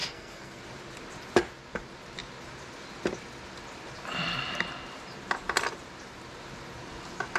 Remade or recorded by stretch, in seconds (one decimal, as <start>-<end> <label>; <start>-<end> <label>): 0.0-0.6 remade; 0.6-7.4 recorded